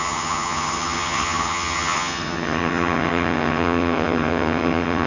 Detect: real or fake fake